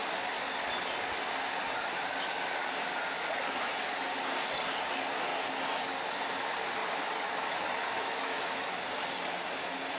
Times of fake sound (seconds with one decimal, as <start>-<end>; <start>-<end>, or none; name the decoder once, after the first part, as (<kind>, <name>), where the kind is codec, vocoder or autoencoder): 6.8-8.7 (autoencoder, DAC-VAE)